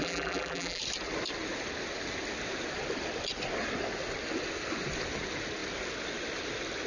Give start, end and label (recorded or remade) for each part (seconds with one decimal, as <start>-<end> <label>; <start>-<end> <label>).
0.0-0.8 remade; 0.8-6.9 recorded